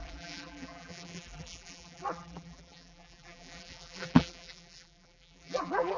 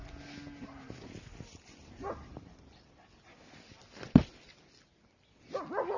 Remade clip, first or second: first